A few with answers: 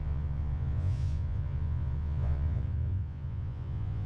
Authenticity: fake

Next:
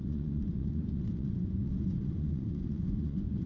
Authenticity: fake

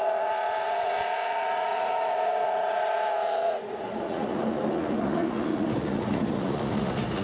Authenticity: fake